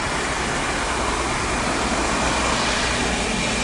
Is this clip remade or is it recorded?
recorded